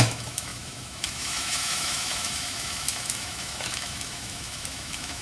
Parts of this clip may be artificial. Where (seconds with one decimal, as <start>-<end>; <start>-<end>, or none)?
0.0-5.2